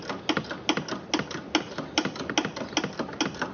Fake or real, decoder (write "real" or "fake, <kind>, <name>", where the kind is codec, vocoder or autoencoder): real